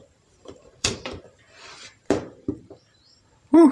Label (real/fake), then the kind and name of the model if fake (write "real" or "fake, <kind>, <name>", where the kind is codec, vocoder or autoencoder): fake, vocoder, BigVGAN v2